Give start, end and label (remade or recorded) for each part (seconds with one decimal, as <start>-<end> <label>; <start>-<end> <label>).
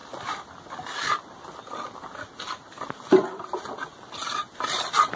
0.0-5.2 recorded